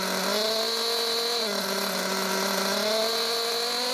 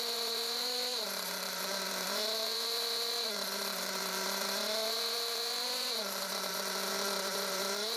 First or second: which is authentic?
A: first